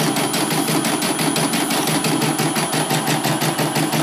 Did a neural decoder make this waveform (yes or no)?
no